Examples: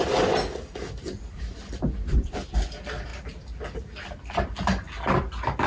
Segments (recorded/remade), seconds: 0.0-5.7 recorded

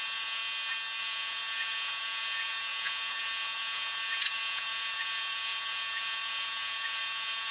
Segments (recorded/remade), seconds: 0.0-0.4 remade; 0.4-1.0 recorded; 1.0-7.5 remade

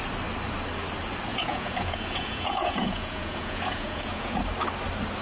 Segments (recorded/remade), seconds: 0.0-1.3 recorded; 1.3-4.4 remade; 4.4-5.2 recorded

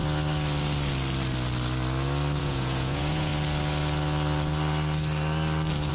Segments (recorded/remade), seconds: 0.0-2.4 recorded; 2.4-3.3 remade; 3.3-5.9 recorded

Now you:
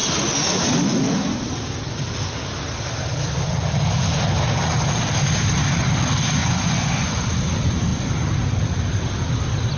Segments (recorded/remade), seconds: 0.0-6.4 recorded; 6.4-7.4 remade; 7.4-9.8 recorded